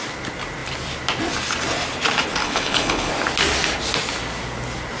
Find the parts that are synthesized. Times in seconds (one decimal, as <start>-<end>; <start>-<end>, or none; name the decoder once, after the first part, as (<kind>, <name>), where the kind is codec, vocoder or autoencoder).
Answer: 2.4-3.1 (codec, HILCodec)